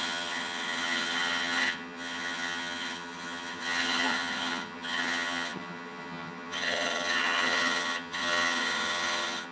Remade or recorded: remade